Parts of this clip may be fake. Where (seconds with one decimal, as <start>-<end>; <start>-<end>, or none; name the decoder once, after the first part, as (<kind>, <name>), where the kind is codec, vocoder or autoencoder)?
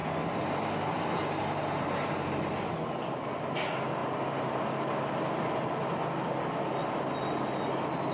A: none